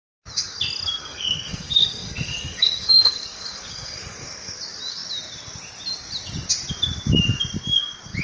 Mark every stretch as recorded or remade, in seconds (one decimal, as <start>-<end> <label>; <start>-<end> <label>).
0.0-1.0 recorded; 1.0-4.6 remade; 4.6-8.2 recorded